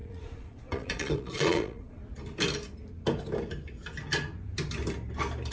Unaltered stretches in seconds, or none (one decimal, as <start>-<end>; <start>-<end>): 2.0-5.5